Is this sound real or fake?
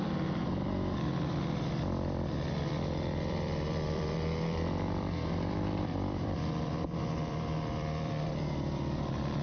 fake